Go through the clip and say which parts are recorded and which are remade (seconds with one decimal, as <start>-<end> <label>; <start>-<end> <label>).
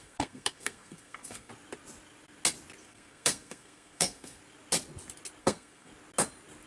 0.0-1.5 remade; 1.5-2.8 recorded; 2.8-4.4 remade; 4.4-5.4 recorded; 5.4-5.9 remade; 5.9-6.7 recorded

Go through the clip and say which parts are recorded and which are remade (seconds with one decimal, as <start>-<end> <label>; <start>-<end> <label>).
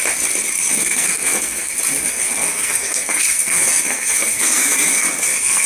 0.0-0.7 recorded; 0.7-1.7 remade; 1.7-2.1 recorded; 2.1-5.7 remade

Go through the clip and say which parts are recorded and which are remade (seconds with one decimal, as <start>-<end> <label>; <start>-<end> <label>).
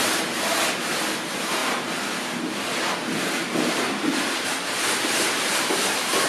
0.0-6.3 recorded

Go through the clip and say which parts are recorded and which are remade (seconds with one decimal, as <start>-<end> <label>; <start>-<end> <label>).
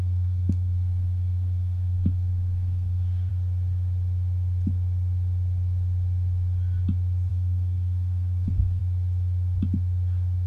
0.0-3.3 remade; 3.3-7.3 recorded; 7.3-8.8 remade; 8.8-10.5 recorded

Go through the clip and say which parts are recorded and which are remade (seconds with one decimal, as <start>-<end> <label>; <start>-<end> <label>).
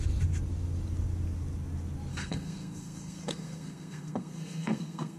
0.0-2.1 recorded; 2.1-5.2 remade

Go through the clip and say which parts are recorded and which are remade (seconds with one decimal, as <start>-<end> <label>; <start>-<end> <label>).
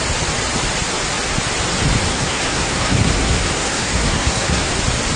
0.0-2.1 recorded; 2.1-4.7 remade; 4.7-5.2 recorded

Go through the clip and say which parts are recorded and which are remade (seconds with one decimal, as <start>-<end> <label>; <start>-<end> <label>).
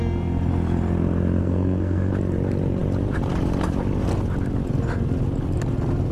0.0-1.4 recorded; 1.4-2.1 remade; 2.1-6.1 recorded